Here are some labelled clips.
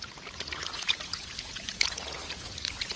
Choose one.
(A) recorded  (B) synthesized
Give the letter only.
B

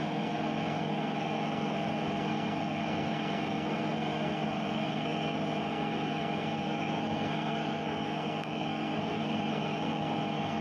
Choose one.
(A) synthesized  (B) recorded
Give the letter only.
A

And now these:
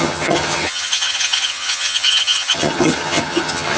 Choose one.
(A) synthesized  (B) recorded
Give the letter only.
A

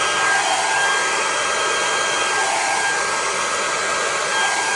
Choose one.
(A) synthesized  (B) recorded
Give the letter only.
B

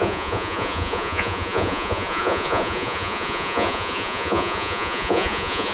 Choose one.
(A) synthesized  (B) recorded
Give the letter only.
A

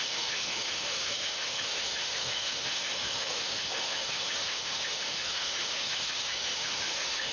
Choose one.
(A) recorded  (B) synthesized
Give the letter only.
B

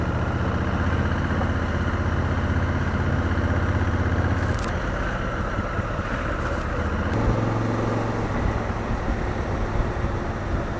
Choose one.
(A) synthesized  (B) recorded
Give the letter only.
B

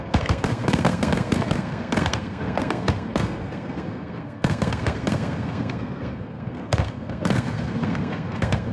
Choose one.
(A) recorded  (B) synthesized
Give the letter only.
B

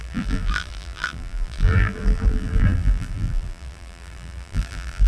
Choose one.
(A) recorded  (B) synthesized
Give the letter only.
B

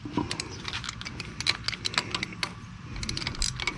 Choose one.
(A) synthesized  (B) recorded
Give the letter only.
B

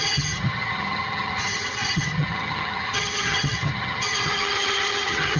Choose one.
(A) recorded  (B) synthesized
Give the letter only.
B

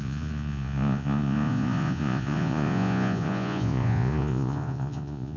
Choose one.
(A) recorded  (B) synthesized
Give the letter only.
B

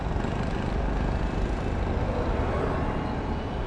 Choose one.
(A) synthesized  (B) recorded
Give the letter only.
B